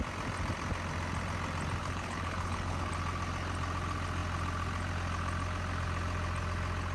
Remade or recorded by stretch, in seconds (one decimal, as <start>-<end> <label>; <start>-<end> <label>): 0.0-1.8 recorded; 1.8-2.9 remade; 2.9-6.9 recorded

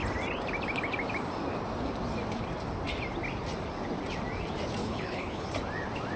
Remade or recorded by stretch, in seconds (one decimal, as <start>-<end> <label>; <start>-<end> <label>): 0.0-4.8 recorded; 4.8-5.5 remade; 5.5-6.2 recorded